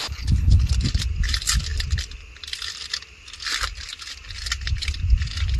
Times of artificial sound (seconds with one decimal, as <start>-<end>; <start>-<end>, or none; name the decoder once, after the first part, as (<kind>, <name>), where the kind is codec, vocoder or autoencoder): 0.0-0.7 (codec, HILCodec)

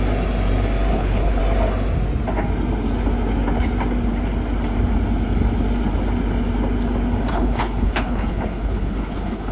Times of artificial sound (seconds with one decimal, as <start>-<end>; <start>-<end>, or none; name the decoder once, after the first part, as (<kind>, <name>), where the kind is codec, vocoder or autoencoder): 0.9-1.4 (codec, HILCodec); 7.3-9.5

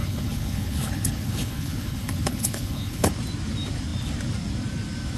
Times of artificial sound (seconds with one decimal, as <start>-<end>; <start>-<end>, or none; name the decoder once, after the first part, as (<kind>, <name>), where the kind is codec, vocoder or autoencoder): 0.0-3.1 (codec, HILCodec)